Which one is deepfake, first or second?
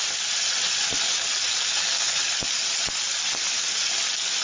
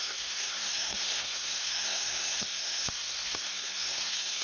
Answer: second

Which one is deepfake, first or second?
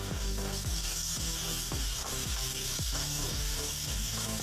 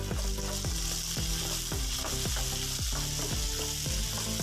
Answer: first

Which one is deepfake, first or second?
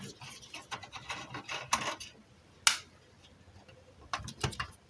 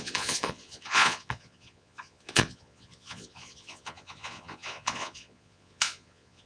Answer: second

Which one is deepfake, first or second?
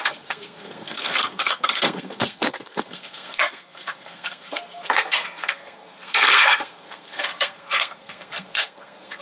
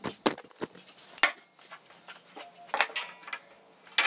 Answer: first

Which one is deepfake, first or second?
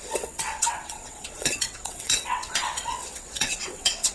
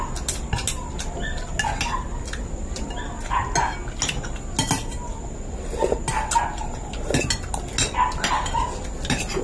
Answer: first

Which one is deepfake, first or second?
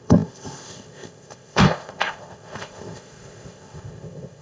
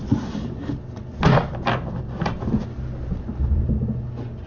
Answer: first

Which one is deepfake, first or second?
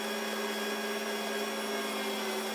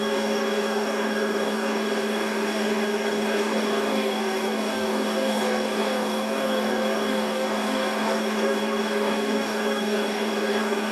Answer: second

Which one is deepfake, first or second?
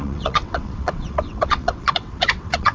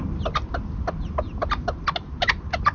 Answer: first